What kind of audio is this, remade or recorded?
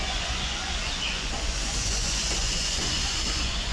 remade